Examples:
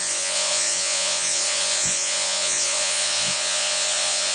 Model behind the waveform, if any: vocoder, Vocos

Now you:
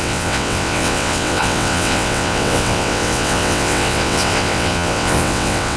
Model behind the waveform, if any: vocoder, WaveNeXt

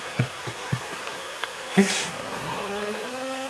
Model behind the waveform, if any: codec, SNAC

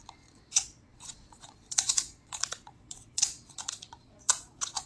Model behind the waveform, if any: vocoder, Vocos